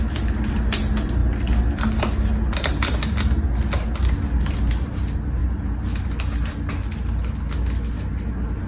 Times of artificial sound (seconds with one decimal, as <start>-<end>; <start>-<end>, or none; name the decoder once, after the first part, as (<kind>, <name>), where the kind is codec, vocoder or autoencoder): none